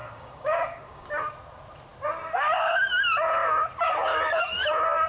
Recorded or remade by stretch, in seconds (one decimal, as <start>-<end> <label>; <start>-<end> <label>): 0.0-1.1 remade; 1.1-5.1 recorded